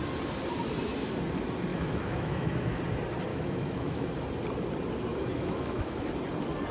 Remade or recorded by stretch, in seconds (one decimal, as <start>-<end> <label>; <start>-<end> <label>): 0.0-1.7 recorded; 1.7-2.8 remade; 2.8-3.3 recorded; 3.3-4.1 remade; 4.1-5.1 recorded; 5.1-6.1 remade; 6.1-6.7 recorded

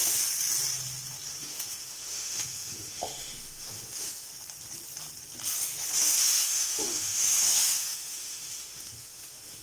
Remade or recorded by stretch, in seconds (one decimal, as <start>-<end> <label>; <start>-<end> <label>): 0.0-1.4 recorded; 1.4-4.3 remade; 4.3-6.0 recorded; 6.0-9.6 remade

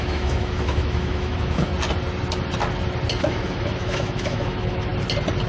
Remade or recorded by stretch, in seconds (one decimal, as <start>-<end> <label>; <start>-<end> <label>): 0.0-1.7 remade; 1.7-3.2 recorded; 3.2-4.9 remade; 4.9-5.5 recorded

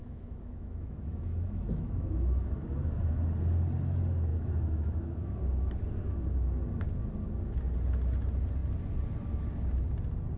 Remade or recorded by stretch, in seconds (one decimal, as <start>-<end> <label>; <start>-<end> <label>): 0.0-2.6 remade; 2.6-4.3 recorded; 4.3-5.4 remade; 5.4-10.4 recorded

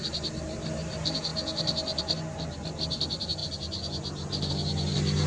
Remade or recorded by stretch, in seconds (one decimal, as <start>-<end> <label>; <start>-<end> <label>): 0.0-5.3 recorded